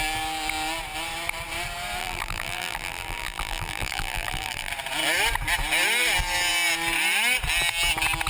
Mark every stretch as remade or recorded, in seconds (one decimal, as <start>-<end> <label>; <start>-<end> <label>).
0.0-2.0 recorded; 2.0-4.7 remade; 4.7-8.3 recorded